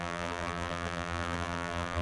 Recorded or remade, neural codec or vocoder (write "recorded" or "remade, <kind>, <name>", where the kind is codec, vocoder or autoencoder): remade, vocoder, BigVGAN v2